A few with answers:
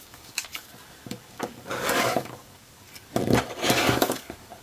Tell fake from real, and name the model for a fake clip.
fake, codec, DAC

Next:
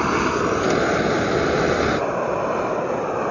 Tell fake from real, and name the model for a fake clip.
real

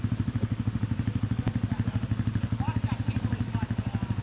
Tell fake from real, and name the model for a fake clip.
real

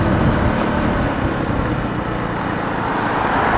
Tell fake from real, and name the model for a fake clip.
real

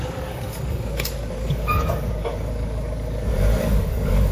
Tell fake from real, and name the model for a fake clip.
fake, codec, DAC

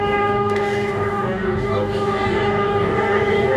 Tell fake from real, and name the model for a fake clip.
fake, codec, DAC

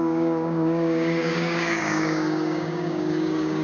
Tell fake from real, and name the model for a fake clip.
fake, codec, DAC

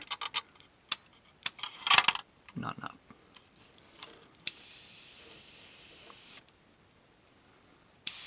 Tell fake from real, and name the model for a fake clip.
real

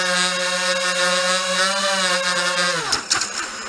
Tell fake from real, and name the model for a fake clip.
real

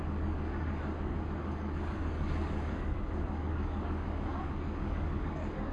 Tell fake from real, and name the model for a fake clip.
fake, codec, DAC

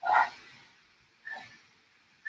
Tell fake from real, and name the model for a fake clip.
real